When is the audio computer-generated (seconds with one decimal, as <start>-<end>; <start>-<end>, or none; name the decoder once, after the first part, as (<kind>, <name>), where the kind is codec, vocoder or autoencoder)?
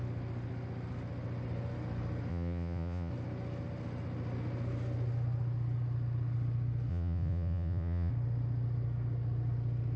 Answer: 2.3-3.1 (vocoder, Vocos); 6.9-8.1